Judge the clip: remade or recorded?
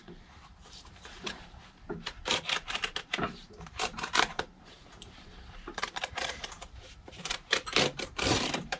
remade